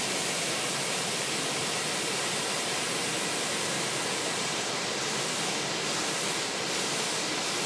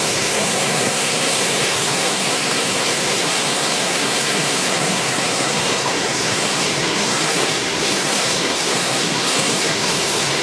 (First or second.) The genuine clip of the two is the first